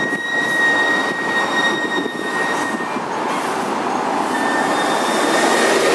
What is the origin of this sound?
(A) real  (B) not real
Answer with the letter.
A